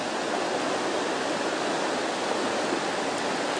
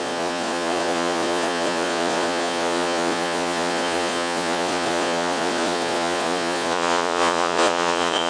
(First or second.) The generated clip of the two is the second